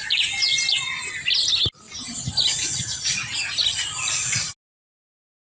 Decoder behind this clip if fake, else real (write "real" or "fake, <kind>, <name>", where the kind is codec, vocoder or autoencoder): real